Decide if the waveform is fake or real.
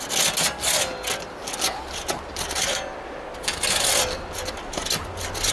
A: real